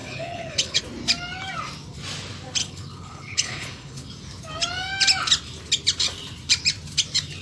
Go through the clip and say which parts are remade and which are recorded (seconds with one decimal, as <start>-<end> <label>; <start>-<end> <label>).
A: 0.0-0.8 remade; 0.8-2.6 recorded; 2.6-4.1 remade; 4.1-7.4 recorded